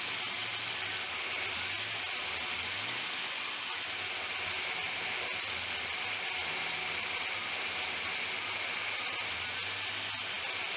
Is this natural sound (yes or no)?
yes